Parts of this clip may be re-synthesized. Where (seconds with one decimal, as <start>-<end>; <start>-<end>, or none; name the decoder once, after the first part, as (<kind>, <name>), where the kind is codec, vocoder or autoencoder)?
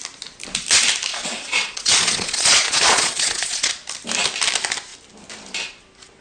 1.1-3.7 (vocoder, Vocos)